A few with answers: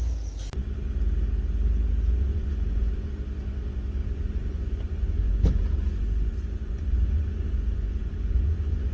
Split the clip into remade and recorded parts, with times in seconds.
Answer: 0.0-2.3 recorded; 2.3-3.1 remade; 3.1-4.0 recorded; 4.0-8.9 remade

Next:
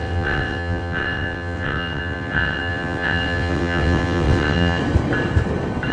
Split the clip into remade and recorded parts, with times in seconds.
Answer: 0.0-4.8 remade; 4.8-5.9 recorded

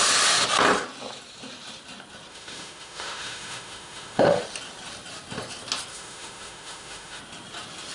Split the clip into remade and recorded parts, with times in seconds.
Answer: 0.0-2.3 recorded; 2.3-4.4 remade; 4.4-5.9 recorded; 5.9-7.2 remade; 7.2-7.9 recorded

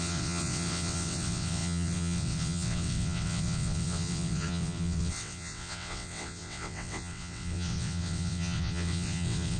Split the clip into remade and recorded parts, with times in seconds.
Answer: 0.0-9.6 remade

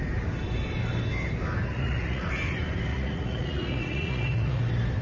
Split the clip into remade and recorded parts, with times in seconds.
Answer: 0.0-1.7 recorded; 1.7-2.3 remade; 2.3-2.9 recorded; 2.9-4.6 remade; 4.6-5.0 recorded

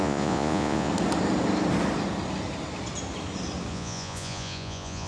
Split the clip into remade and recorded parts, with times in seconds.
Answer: 0.0-0.9 remade; 0.9-3.7 recorded; 3.7-5.1 remade